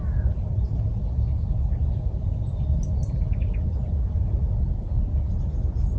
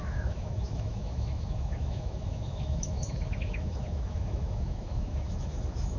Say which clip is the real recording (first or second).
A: first